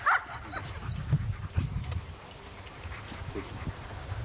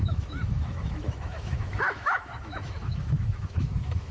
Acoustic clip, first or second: first